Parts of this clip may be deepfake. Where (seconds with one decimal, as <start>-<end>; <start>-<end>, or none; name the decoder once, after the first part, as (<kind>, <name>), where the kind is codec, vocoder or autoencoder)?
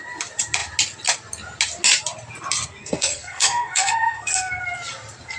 2.8-4.6 (codec, SNAC)